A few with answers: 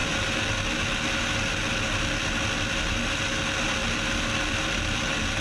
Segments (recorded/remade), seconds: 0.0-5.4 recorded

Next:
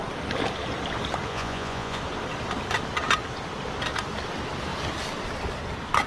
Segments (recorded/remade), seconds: 0.0-1.3 recorded; 1.3-2.0 remade; 2.0-6.1 recorded

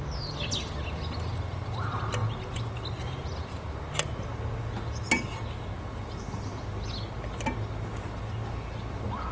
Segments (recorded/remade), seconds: 0.0-9.3 recorded

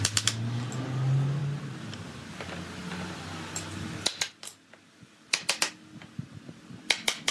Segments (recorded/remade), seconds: 0.0-7.3 recorded

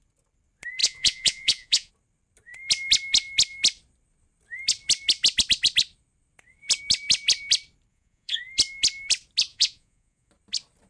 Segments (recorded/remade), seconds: 0.0-0.8 recorded; 0.8-1.9 remade; 1.9-7.9 recorded; 7.9-8.4 remade; 8.4-9.5 recorded; 9.5-10.3 remade; 10.3-10.9 recorded

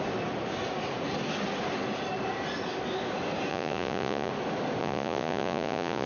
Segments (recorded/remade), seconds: 0.0-3.5 recorded; 3.5-4.3 remade; 4.3-4.8 recorded; 4.8-6.1 remade

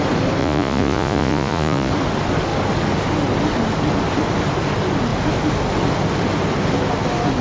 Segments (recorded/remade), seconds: 0.0-0.4 recorded; 0.4-1.9 remade; 1.9-7.4 recorded

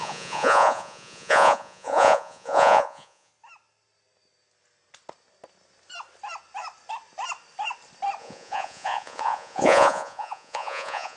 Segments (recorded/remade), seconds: 0.0-3.3 remade; 3.3-8.2 recorded; 8.2-11.2 remade